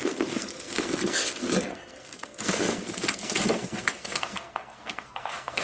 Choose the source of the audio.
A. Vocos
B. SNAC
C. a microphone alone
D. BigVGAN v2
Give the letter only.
B